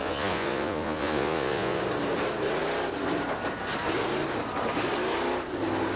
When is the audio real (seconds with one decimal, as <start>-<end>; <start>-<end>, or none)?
1.8-6.0